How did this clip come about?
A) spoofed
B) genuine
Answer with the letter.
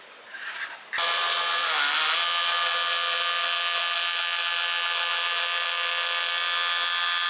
B